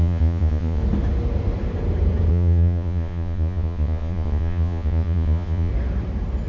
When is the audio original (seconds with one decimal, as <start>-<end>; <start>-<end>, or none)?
0.8-2.3; 5.7-6.5